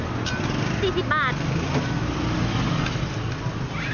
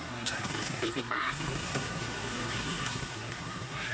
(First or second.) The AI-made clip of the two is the second